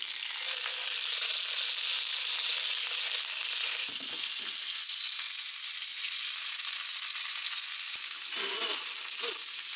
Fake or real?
real